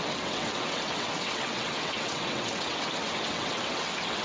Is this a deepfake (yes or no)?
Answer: yes